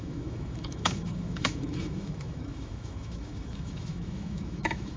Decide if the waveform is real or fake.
fake